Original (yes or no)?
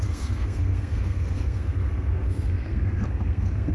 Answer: no